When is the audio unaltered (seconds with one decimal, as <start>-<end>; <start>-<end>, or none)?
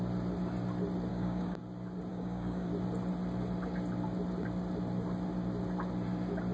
0.0-1.1; 1.6-2.1; 2.7-6.5